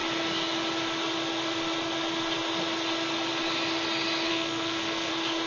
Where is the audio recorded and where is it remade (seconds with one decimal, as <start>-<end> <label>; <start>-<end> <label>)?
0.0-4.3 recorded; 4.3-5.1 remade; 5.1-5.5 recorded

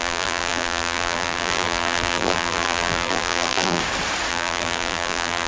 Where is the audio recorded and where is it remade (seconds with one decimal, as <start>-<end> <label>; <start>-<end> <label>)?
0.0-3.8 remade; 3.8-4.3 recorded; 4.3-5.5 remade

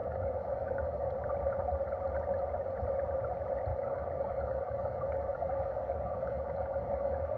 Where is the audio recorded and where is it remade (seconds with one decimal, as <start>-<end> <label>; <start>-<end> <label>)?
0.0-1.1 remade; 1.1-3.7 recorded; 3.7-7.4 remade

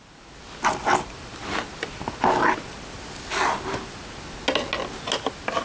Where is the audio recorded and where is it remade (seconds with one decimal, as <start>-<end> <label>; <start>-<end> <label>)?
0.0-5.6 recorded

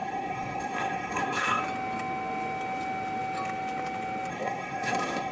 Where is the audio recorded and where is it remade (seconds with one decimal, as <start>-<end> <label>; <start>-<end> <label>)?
0.0-1.6 remade; 1.6-4.3 recorded; 4.3-5.3 remade